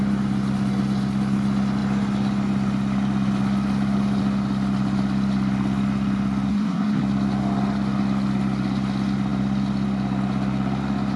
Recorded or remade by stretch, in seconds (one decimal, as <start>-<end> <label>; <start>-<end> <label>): 0.0-6.5 recorded; 6.5-7.0 remade; 7.0-11.2 recorded